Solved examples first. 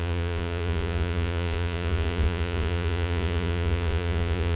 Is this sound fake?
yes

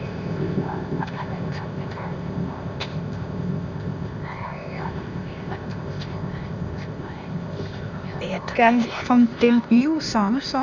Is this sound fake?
yes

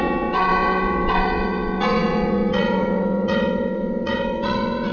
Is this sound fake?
yes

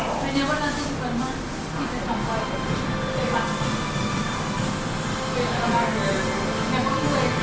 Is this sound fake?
no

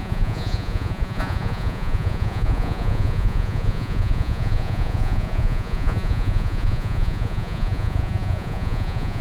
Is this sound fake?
yes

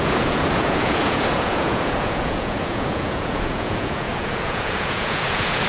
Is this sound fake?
yes